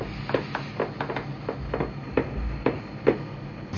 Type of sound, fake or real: real